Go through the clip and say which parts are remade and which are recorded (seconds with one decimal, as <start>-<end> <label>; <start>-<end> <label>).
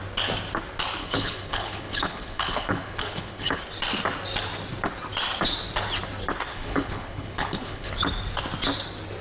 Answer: 0.0-1.0 recorded; 1.0-3.6 remade; 3.6-6.5 recorded; 6.5-8.0 remade; 8.0-9.2 recorded